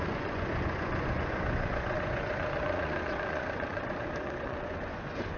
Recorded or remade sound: remade